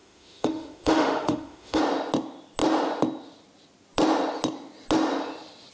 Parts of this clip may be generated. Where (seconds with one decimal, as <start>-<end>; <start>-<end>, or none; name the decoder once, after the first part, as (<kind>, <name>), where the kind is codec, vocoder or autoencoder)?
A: 0.0-1.8 (autoencoder, DAC-VAE)